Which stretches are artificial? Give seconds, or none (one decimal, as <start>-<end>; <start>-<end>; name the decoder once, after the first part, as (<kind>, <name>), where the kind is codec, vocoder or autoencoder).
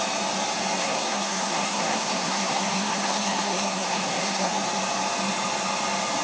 0.8-4.5 (codec, SNAC)